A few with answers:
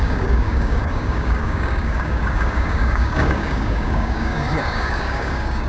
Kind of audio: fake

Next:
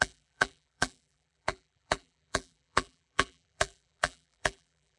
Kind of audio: fake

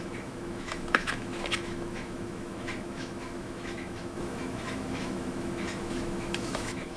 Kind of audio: fake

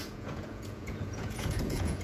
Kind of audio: fake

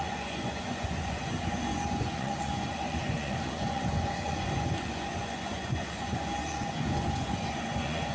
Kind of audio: fake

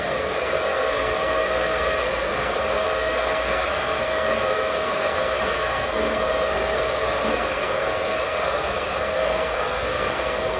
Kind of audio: fake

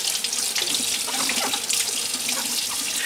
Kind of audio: real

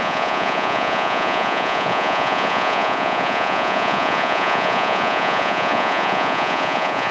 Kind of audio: fake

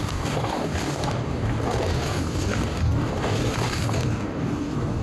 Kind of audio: fake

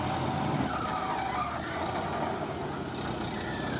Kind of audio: real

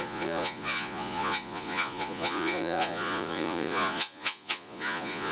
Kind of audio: fake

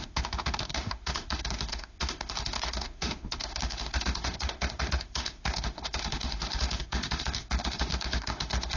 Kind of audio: fake